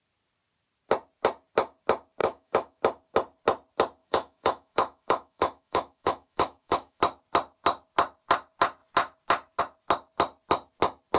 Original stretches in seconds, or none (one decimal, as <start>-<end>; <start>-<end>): 0.0-2.2; 2.8-4.0; 7.0-11.2